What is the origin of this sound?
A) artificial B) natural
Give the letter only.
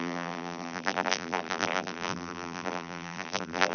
A